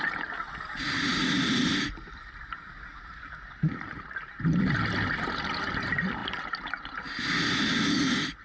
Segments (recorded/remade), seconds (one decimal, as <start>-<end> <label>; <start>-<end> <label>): 0.0-8.4 recorded